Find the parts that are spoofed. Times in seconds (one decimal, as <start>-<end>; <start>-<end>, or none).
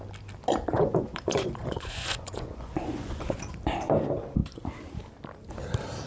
0.7-3.4